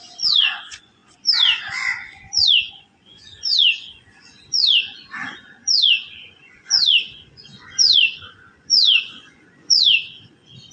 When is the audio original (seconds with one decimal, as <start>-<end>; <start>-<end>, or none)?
none